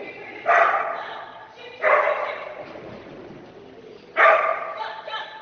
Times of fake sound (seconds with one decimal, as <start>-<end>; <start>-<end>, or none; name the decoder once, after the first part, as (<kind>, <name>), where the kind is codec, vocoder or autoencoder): 1.4-3.5 (vocoder, BigVGAN v2); 4.5-5.0